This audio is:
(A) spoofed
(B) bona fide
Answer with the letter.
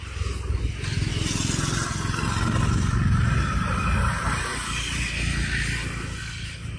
B